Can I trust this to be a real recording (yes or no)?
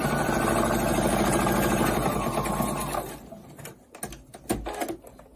yes